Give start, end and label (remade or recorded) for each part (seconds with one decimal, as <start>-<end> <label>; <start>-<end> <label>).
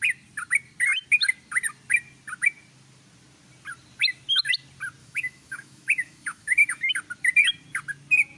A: 0.0-5.0 recorded; 5.0-6.9 remade; 6.9-8.4 recorded